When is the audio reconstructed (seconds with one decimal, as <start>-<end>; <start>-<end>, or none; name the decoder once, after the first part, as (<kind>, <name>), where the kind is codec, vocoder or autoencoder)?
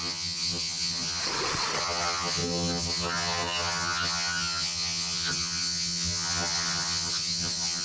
0.0-1.2 (vocoder, HiFi-GAN); 1.8-7.8